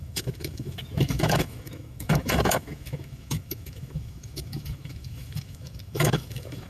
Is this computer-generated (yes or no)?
yes